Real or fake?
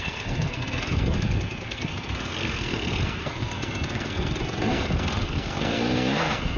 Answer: fake